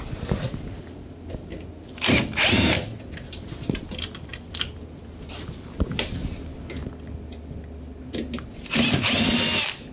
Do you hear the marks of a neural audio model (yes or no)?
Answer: no